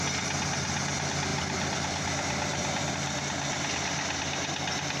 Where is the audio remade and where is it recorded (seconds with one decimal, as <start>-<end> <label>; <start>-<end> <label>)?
0.0-1.3 recorded; 1.3-2.9 remade; 2.9-5.0 recorded